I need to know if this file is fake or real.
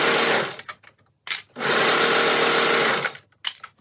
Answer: real